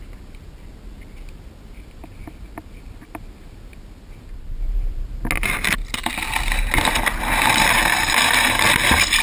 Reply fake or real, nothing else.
real